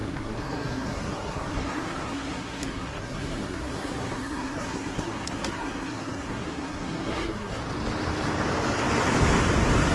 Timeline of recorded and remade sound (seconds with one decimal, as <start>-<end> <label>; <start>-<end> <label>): 0.0-7.6 remade; 7.6-9.9 recorded